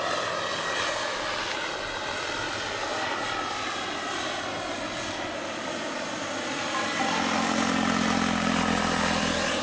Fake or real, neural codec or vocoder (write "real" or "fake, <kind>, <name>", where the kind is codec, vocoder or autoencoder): real